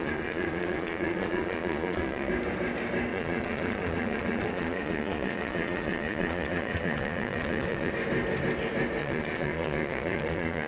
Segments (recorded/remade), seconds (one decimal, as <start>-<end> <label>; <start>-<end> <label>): 0.0-2.3 remade; 2.3-3.1 recorded; 3.1-7.9 remade; 7.9-9.0 recorded; 9.0-10.7 remade